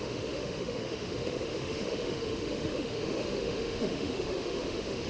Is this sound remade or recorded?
remade